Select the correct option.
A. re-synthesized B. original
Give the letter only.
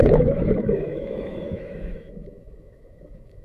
A